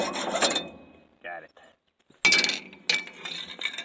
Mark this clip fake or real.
real